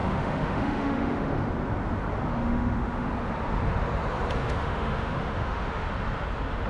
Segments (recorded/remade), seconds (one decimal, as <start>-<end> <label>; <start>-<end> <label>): 0.0-1.5 remade; 1.5-2.3 recorded; 2.3-3.1 remade; 3.1-4.4 recorded; 4.4-5.8 remade; 5.8-6.7 recorded